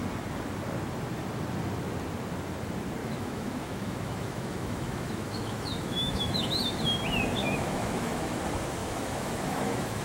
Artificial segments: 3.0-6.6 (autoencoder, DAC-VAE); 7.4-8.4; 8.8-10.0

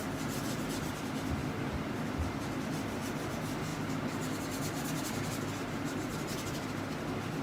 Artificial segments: none